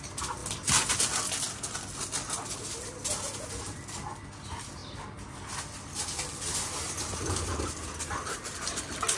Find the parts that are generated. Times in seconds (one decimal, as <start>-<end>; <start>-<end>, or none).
none